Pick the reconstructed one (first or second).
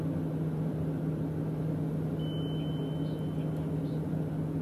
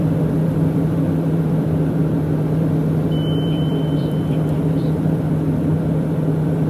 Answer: second